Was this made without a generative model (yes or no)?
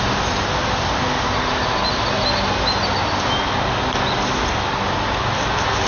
yes